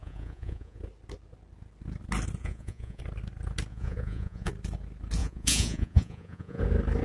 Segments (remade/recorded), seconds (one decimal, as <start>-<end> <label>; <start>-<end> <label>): 0.0-0.8 remade; 0.8-2.4 recorded; 2.4-3.0 remade; 3.0-3.7 recorded; 3.7-4.5 remade; 4.5-5.2 recorded; 5.2-6.6 remade; 6.6-7.0 recorded

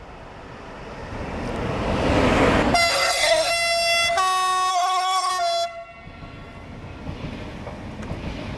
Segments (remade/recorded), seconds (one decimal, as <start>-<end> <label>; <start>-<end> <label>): 0.0-2.9 recorded; 2.9-3.5 remade; 3.5-4.7 recorded; 4.7-5.3 remade; 5.3-8.6 recorded

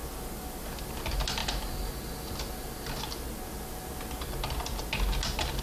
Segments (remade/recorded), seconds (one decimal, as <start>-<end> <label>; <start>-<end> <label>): 0.0-5.6 recorded